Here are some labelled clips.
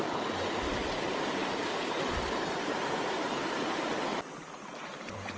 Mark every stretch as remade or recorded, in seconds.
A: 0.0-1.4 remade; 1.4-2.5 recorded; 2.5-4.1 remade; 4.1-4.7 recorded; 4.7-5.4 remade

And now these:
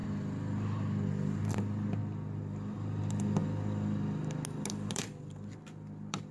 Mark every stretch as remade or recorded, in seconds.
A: 0.0-1.1 recorded; 1.1-3.4 remade; 3.4-4.9 recorded; 4.9-6.3 remade

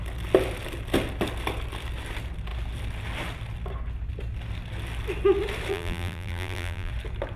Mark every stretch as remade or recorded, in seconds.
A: 0.0-5.7 recorded; 5.7-6.9 remade; 6.9-7.4 recorded